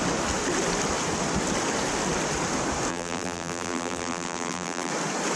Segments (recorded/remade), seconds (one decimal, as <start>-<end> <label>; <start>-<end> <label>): 0.0-2.9 recorded; 2.9-4.9 remade; 4.9-5.4 recorded